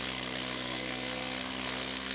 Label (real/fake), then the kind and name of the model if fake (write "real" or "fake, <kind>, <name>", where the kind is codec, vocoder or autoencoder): fake, codec, SNAC